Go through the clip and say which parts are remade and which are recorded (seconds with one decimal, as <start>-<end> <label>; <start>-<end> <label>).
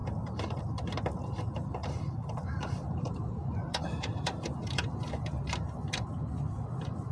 0.0-0.6 remade; 0.6-1.8 recorded; 1.8-6.1 remade; 6.1-7.1 recorded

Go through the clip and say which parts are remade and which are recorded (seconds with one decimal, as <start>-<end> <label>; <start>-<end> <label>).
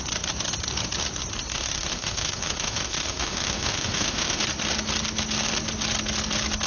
0.0-1.5 recorded; 1.5-4.4 remade; 4.4-6.7 recorded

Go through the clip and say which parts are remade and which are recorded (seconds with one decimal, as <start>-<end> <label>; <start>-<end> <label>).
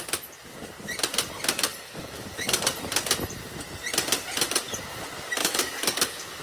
0.0-1.7 recorded; 1.7-2.6 remade; 2.6-5.4 recorded; 5.4-6.4 remade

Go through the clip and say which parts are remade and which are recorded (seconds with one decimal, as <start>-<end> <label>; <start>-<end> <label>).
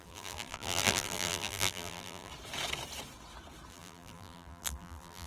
0.0-2.3 remade; 2.3-3.7 recorded; 3.7-5.3 remade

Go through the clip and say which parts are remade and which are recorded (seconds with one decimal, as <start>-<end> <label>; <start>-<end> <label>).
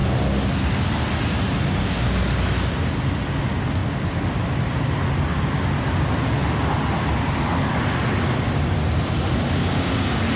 0.0-10.4 recorded